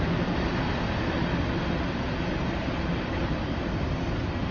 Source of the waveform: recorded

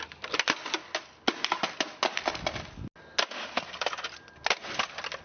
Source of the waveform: recorded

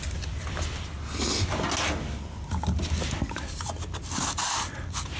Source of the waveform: recorded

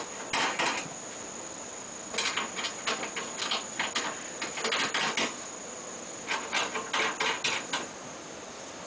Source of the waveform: recorded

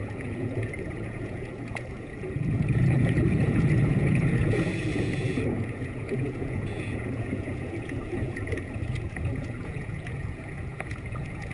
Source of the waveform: remade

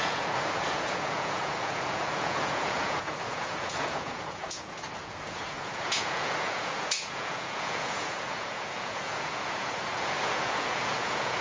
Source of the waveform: remade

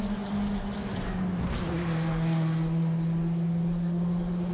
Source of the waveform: recorded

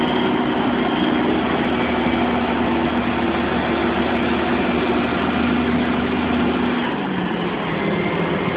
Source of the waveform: recorded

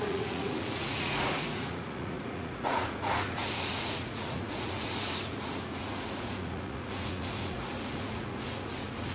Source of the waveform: remade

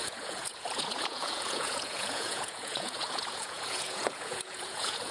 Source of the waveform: remade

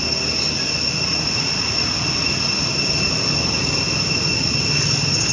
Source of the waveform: recorded